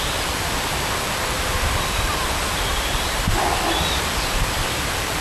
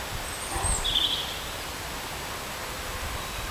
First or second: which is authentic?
second